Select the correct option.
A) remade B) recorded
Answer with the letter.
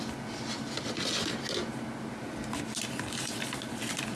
B